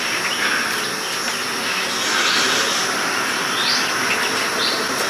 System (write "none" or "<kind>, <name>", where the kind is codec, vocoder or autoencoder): none